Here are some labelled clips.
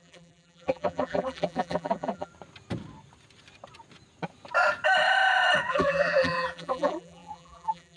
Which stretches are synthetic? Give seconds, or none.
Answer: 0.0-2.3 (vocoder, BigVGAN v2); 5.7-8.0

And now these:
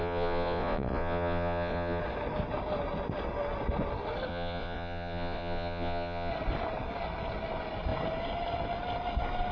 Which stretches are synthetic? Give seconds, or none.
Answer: 0.0-2.0 (vocoder, Vocos); 4.3-6.3